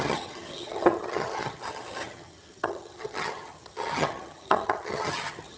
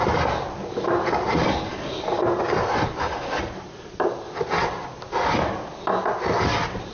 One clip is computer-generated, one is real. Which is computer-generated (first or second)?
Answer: first